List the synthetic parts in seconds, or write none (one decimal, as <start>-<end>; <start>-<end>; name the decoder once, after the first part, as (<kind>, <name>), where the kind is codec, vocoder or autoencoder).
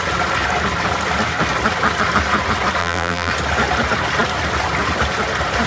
2.8-3.3 (vocoder, BigVGAN v2)